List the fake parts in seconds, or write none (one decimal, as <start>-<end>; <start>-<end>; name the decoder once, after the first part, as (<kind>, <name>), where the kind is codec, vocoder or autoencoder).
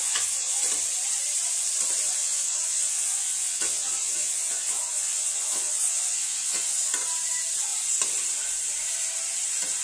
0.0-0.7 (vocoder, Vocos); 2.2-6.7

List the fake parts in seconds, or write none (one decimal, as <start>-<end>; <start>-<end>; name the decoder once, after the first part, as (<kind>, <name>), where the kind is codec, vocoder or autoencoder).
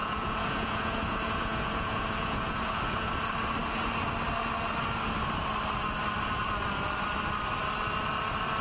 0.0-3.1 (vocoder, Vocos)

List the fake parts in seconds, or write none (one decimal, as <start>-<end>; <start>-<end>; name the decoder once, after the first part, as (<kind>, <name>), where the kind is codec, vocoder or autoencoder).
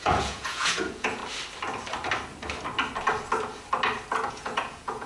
0.0-1.2 (vocoder, Vocos); 4.3-5.1